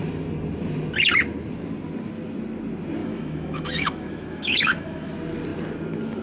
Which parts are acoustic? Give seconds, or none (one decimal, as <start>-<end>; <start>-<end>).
0.0-3.0; 5.1-6.2